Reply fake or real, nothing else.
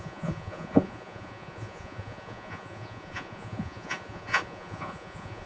fake